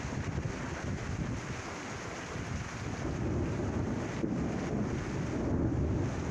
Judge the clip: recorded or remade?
recorded